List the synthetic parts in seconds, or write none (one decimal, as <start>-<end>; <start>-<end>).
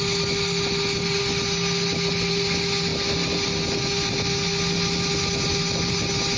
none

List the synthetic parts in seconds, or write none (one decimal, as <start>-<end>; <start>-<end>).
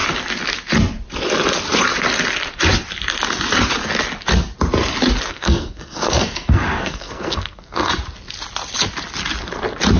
5.3-7.9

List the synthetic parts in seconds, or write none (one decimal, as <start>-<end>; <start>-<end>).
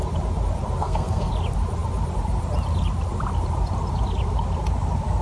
0.8-1.3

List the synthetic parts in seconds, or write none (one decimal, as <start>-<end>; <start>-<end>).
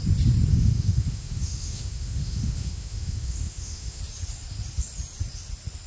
0.5-4.0